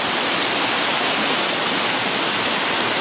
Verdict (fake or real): real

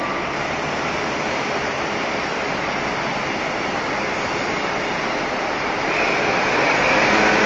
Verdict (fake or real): fake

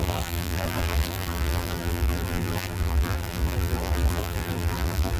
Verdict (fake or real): fake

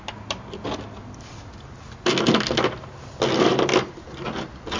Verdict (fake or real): real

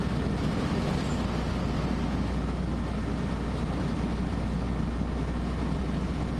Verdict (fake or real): real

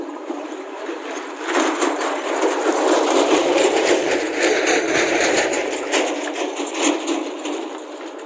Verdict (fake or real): fake